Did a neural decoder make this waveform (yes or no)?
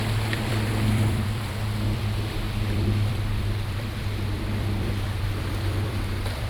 yes